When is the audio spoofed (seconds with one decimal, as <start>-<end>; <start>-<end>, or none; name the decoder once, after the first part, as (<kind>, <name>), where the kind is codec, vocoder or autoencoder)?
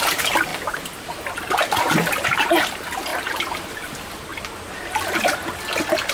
0.0-4.3 (vocoder, BigVGAN v2)